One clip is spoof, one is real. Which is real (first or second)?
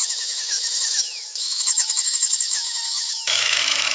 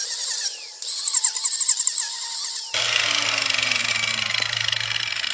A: second